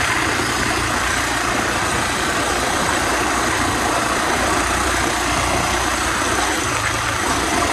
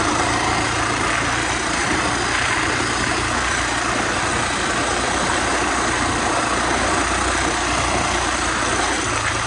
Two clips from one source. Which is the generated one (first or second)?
first